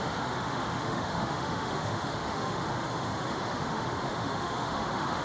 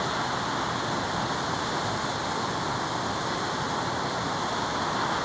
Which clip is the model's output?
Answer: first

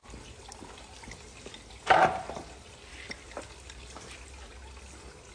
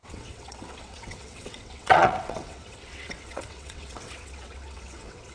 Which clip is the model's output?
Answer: second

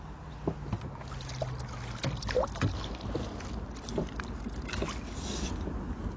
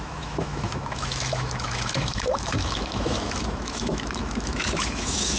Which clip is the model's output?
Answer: second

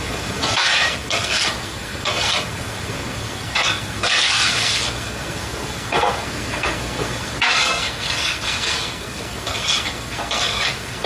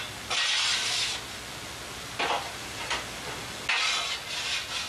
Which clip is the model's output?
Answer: first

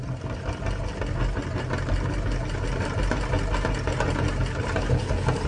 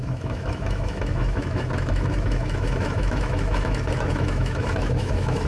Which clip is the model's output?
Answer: second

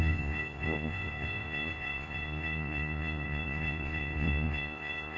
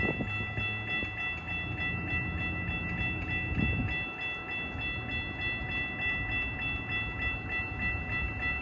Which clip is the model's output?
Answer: first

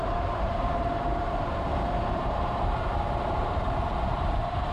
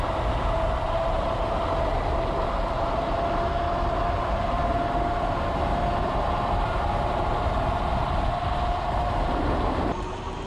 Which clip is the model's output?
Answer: first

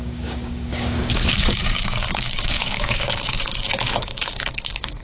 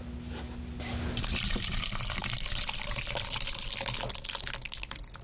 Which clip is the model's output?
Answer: first